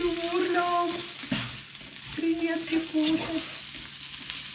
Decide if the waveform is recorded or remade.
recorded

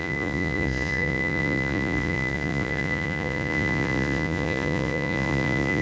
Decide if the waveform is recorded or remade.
remade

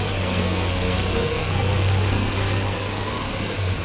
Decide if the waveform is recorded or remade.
remade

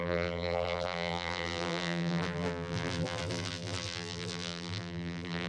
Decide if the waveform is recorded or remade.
remade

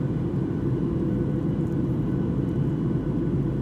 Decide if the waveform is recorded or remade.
recorded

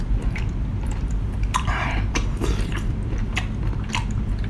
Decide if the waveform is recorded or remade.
remade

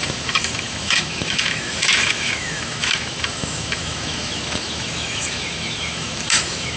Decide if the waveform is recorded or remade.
remade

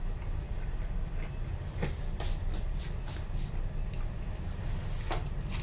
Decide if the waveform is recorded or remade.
recorded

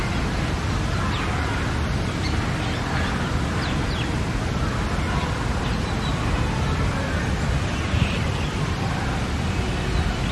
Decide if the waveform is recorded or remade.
recorded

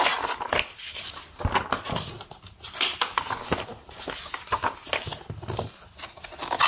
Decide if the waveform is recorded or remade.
recorded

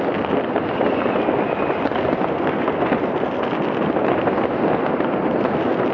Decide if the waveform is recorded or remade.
recorded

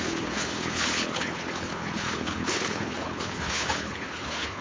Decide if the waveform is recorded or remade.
remade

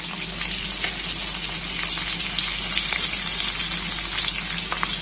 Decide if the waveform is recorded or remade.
recorded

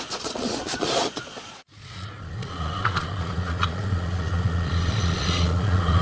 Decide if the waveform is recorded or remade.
remade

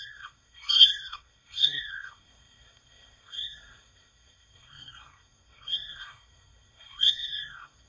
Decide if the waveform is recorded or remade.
remade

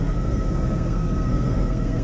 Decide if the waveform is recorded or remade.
remade